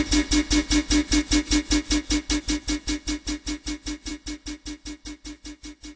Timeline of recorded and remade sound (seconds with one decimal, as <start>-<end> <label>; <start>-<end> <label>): 0.0-6.0 recorded